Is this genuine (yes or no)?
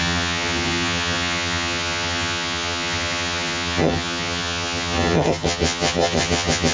no